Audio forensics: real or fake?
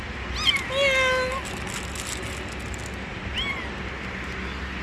real